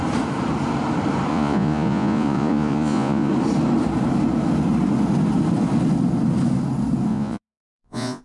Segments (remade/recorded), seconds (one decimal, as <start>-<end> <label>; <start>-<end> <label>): 0.0-1.3 recorded; 1.3-3.3 remade; 3.3-7.1 recorded; 7.1-8.2 remade